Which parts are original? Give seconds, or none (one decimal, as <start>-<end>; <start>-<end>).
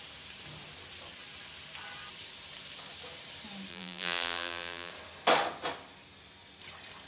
0.0-3.7; 4.9-7.1